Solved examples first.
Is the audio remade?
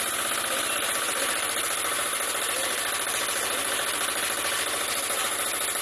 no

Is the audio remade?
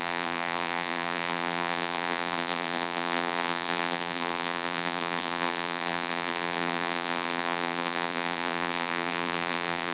yes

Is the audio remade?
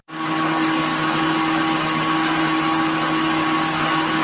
no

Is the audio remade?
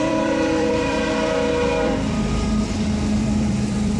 yes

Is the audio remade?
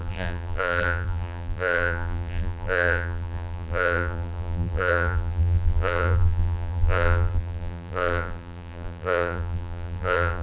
yes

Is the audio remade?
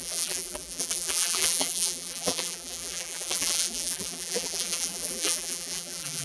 yes